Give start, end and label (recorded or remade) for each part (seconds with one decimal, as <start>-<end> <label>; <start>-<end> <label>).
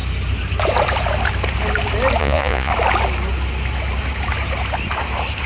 0.0-2.2 recorded; 2.2-2.7 remade; 2.7-5.5 recorded